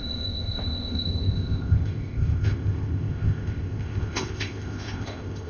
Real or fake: fake